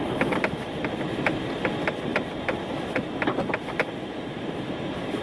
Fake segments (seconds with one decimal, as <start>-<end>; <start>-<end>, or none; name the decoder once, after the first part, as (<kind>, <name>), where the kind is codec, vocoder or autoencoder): none